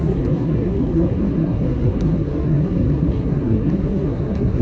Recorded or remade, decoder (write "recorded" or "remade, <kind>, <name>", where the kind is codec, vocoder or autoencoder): remade, codec, SNAC